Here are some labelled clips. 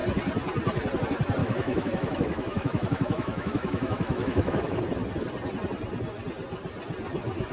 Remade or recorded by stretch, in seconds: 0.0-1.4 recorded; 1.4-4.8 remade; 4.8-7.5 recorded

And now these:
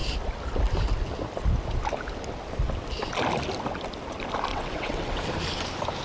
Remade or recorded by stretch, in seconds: 0.0-4.5 recorded; 4.5-5.2 remade; 5.2-6.0 recorded

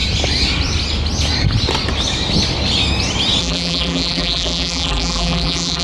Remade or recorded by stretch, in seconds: 0.0-3.4 recorded; 3.4-5.8 remade

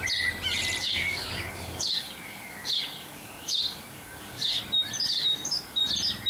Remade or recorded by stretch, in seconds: 0.0-0.8 recorded; 0.8-4.6 remade; 4.6-5.1 recorded; 5.1-5.8 remade; 5.8-6.3 recorded

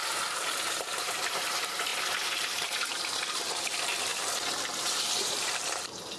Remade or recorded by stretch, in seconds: 0.0-6.2 remade

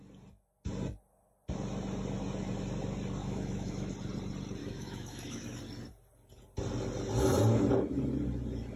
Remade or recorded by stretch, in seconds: 0.0-3.2 recorded; 3.2-3.9 remade; 3.9-4.6 recorded; 4.6-5.6 remade; 5.6-8.8 recorded

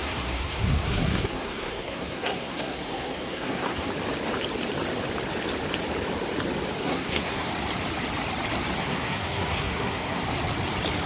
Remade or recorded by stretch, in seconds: 0.0-3.9 remade; 3.9-6.8 recorded; 6.8-7.5 remade; 7.5-8.8 recorded; 8.8-10.2 remade; 10.2-11.1 recorded